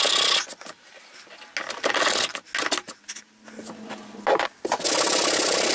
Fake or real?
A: real